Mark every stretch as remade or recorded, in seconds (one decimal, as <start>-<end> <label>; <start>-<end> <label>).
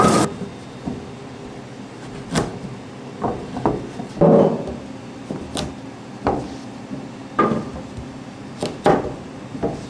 0.0-9.9 recorded